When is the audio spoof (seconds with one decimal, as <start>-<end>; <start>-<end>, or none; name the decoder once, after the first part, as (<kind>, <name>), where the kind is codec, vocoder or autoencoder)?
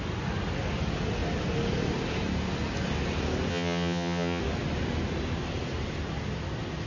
3.5-4.4 (vocoder, HiFi-GAN)